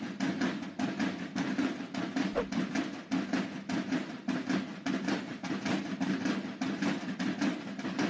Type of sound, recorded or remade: recorded